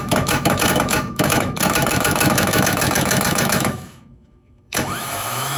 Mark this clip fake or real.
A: fake